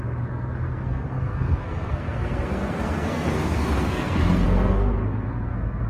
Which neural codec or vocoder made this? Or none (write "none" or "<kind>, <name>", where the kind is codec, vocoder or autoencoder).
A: codec, SNAC